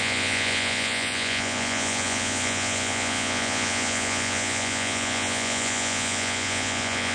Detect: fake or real fake